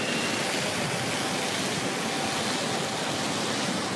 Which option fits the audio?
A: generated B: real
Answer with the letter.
B